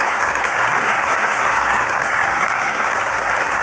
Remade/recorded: remade